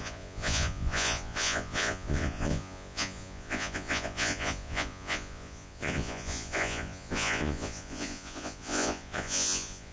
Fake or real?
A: fake